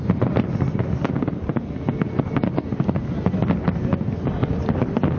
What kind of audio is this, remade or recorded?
recorded